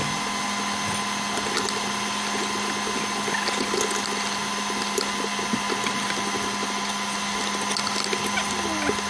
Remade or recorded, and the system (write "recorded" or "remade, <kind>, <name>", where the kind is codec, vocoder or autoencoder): recorded